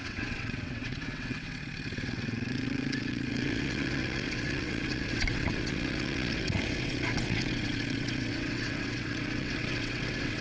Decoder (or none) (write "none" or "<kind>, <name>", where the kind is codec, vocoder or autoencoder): vocoder, WaveNeXt